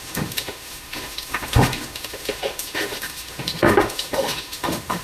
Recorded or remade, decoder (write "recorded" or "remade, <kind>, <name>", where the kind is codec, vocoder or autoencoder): remade, autoencoder, DAC-VAE